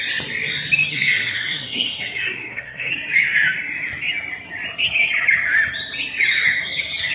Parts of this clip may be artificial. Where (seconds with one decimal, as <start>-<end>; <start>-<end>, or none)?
0.9-2.9